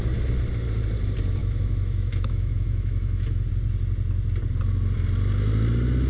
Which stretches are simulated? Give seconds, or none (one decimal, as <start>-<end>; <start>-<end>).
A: 1.4-3.5